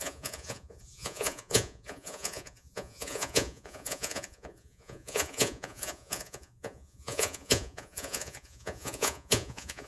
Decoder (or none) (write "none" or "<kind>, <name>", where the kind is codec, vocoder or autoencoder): vocoder, Vocos